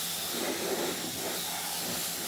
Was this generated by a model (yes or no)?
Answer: no